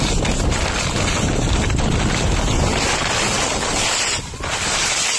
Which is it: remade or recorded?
recorded